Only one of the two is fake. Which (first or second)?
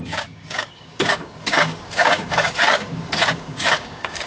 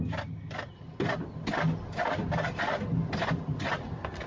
first